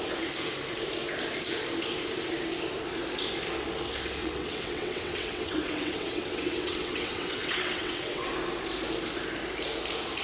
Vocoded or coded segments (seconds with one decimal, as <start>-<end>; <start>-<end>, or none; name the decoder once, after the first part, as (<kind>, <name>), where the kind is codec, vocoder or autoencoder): 4.2-8.3 (vocoder, WaveNeXt)